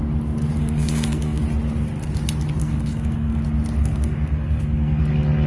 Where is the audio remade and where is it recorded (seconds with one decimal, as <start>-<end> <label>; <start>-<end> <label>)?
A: 0.0-0.6 recorded; 0.6-1.4 remade; 1.4-2.6 recorded; 2.6-3.4 remade; 3.4-3.8 recorded; 3.8-5.0 remade; 5.0-5.5 recorded

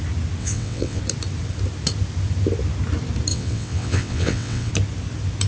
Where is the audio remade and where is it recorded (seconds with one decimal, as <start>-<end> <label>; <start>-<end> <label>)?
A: 0.0-0.4 recorded; 0.4-1.0 remade; 1.0-3.3 recorded; 3.3-4.7 remade; 4.7-5.5 recorded

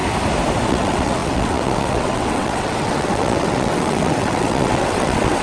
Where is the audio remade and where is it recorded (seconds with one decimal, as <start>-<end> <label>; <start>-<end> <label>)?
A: 0.0-0.7 recorded; 0.7-5.4 remade

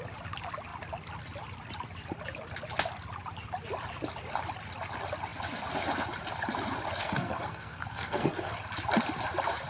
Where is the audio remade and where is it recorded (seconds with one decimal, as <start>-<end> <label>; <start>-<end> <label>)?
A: 0.0-7.0 recorded; 7.0-8.5 remade; 8.5-9.7 recorded

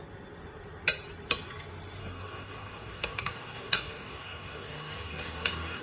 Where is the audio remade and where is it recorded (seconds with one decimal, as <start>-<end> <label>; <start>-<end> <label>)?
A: 0.0-2.0 recorded; 2.0-5.8 remade